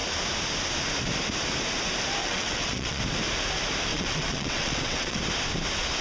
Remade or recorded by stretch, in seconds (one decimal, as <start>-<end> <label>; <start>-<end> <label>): 0.0-2.2 recorded; 2.2-3.0 remade; 3.0-3.9 recorded; 3.9-5.2 remade; 5.2-6.0 recorded